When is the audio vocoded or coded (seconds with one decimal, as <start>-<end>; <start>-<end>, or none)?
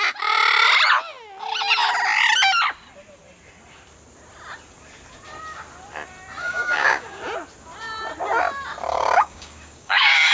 6.4-7.2; 8.9-10.3